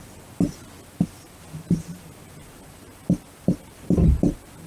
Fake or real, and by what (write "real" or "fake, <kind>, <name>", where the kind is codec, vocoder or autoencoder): real